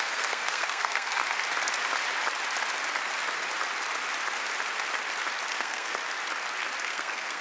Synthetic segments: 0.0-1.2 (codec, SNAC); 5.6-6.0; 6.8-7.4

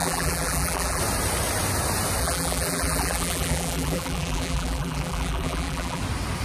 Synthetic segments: 0.0-1.0 (vocoder, BigVGAN v2); 2.2-6.0

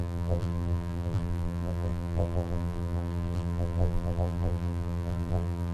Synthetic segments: 0.0-5.7 (vocoder, BigVGAN v2)

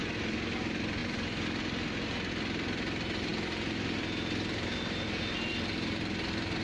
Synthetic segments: none

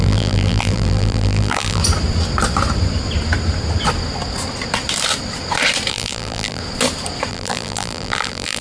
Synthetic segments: 0.0-1.8 (vocoder, BigVGAN v2); 5.9-6.6; 7.3-8.6

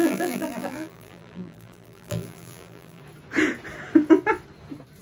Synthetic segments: 0.0-3.0 (vocoder, BigVGAN v2)

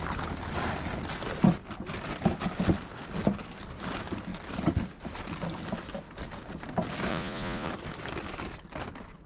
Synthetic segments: 7.1-7.7 (vocoder, Vocos)